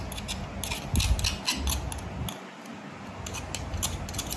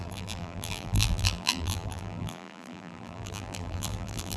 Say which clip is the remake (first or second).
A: second